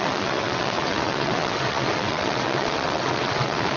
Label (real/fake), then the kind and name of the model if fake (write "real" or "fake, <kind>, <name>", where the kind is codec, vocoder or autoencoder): fake, vocoder, WaveNeXt